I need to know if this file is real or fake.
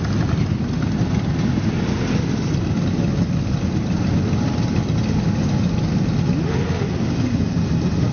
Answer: real